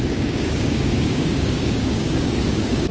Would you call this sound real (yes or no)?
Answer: no